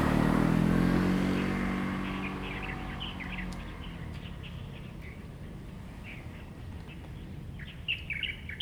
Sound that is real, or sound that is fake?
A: real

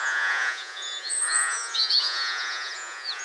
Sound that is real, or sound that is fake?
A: fake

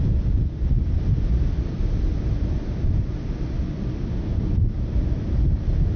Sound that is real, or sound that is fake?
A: real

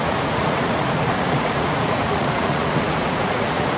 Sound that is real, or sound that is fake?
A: fake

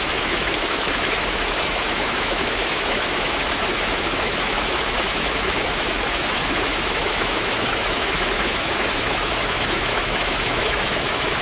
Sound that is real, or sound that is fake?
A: fake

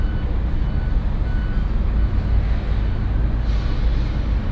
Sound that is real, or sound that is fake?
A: real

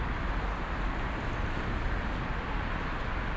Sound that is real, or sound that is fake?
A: real